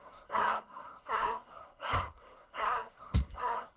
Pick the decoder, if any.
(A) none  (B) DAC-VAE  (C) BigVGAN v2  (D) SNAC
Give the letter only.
D